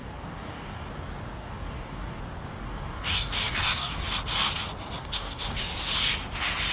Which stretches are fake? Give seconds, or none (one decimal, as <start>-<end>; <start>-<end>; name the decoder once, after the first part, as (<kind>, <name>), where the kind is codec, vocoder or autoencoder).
0.0-0.9 (codec, DAC); 1.4-2.2; 2.6-4.0; 5.0-5.7

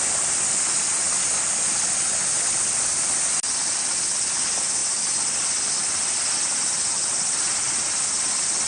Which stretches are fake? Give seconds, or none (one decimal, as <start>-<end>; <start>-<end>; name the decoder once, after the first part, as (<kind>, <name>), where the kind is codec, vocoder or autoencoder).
none

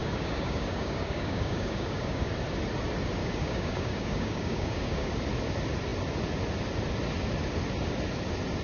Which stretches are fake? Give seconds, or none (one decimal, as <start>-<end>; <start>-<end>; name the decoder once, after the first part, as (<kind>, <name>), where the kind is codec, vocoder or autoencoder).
0.0-2.3 (codec, DAC); 3.2-5.1

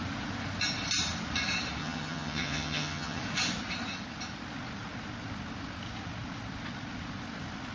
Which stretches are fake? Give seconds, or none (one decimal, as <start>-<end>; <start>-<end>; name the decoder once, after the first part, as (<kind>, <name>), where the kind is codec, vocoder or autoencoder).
1.8-3.2 (vocoder, HiFi-GAN)

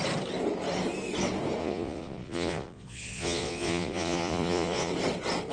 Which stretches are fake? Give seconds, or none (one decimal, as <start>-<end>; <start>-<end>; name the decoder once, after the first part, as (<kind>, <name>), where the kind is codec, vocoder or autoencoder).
1.6-4.9 (vocoder, Vocos)

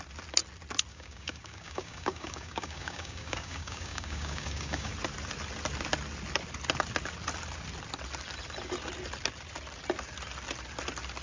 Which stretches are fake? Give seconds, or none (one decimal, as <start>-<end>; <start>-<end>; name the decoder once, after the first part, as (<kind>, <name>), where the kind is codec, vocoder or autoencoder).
0.9-4.9 (codec, DAC)

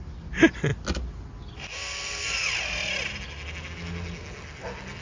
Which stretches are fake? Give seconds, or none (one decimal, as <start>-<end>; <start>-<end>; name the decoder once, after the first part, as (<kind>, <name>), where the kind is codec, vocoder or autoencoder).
none